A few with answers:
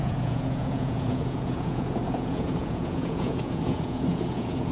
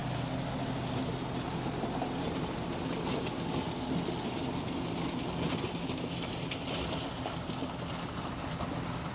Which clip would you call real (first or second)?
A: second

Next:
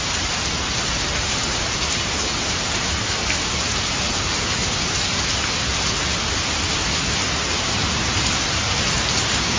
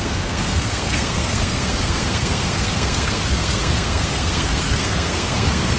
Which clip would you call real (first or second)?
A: first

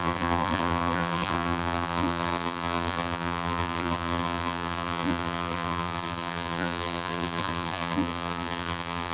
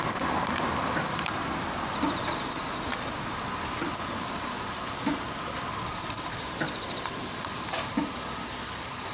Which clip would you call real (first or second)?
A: second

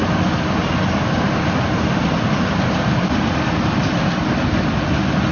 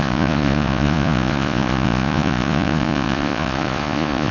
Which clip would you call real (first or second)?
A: first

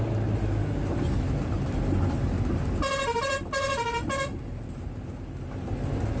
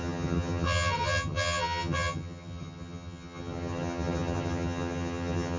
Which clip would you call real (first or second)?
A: first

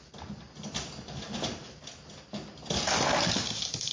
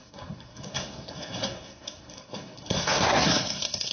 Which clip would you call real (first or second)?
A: first